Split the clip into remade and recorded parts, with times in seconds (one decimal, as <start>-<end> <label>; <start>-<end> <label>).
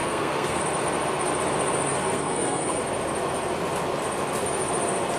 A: 0.0-0.6 remade; 0.6-1.9 recorded; 1.9-2.8 remade; 2.8-5.2 recorded